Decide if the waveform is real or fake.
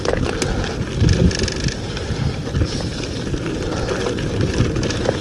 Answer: real